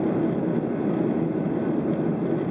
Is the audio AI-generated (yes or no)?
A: no